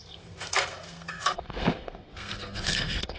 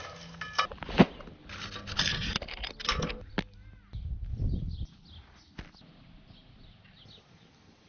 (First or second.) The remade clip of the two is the first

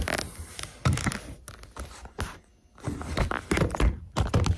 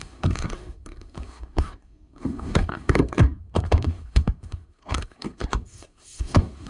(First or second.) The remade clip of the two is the second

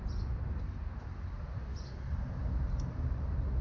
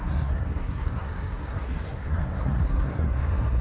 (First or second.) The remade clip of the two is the second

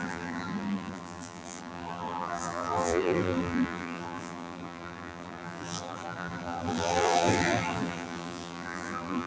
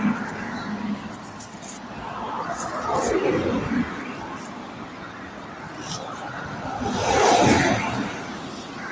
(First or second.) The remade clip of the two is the first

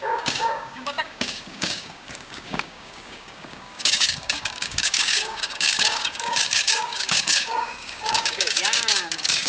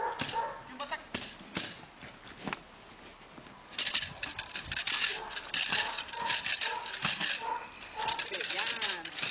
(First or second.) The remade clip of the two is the first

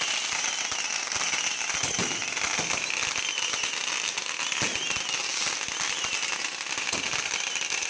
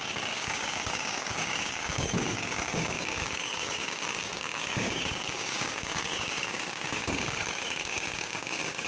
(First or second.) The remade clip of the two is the second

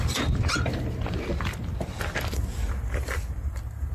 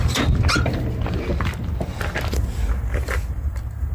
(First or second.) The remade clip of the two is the first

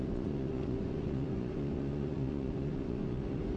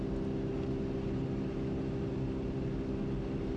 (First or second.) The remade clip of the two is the first